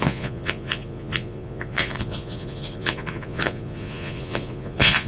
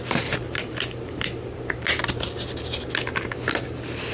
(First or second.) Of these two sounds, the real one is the second